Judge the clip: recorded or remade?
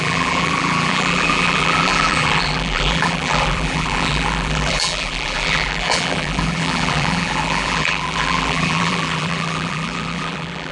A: remade